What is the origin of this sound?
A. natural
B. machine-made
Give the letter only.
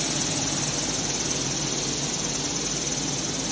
A